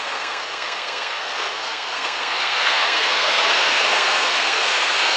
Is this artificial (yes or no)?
yes